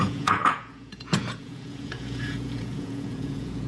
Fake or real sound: fake